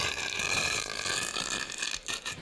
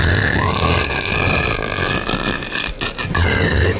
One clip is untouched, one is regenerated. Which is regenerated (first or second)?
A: first